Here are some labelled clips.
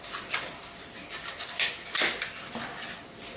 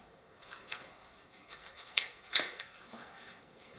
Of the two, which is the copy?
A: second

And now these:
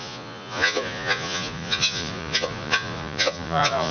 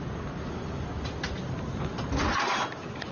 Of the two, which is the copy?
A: first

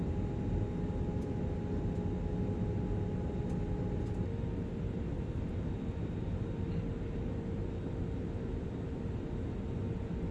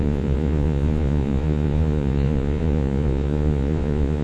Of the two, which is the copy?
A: second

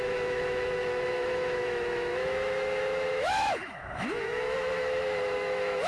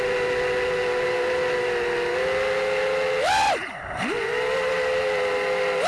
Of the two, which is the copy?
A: first